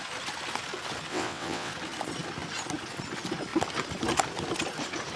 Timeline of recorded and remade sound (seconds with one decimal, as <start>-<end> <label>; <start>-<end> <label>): 0.0-1.1 recorded; 1.1-1.7 remade; 1.7-5.2 recorded